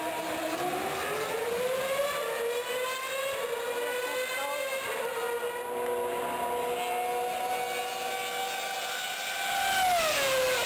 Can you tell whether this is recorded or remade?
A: recorded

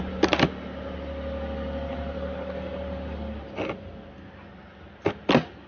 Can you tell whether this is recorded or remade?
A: recorded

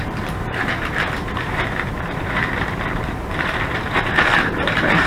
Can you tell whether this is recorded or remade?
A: remade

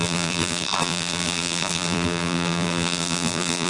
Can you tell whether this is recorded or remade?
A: remade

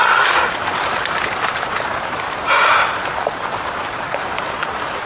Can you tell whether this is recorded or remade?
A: remade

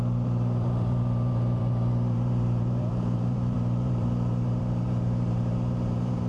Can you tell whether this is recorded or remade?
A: remade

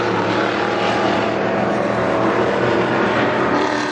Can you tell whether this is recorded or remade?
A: remade